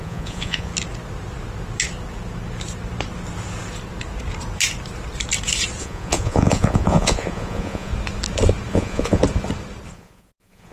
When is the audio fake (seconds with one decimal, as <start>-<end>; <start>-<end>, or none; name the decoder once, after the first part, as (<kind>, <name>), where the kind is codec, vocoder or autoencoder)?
0.0-0.7 (vocoder, Vocos); 5.8-7.9; 8.7-9.2; 9.9-10.7